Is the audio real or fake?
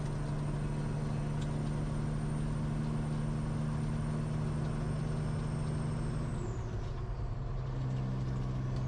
real